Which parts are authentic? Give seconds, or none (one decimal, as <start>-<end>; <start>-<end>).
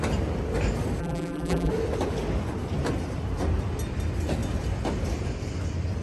0.0-1.0; 1.7-6.0